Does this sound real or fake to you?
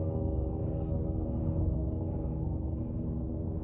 fake